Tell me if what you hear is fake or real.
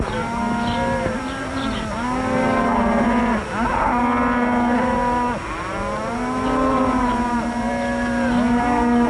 real